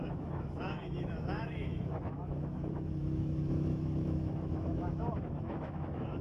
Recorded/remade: remade